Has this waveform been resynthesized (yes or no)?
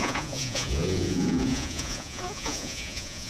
yes